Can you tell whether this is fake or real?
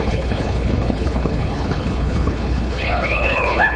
fake